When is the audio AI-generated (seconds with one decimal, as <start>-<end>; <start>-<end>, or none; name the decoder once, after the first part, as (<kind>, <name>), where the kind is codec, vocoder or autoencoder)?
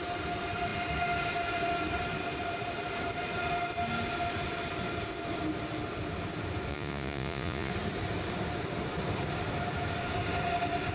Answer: 6.7-7.7 (vocoder, Vocos)